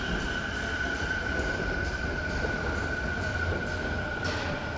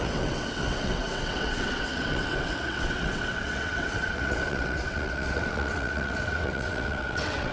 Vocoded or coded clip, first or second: second